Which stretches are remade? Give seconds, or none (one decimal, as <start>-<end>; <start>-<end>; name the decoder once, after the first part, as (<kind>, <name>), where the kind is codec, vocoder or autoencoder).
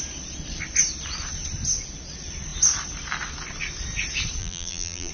4.4-5.1 (vocoder, BigVGAN v2)